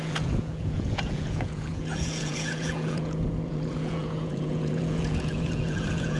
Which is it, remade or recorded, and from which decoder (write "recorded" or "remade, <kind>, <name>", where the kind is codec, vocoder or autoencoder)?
remade, vocoder, Vocos